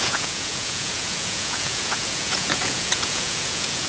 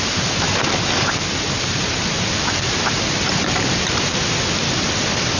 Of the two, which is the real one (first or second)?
second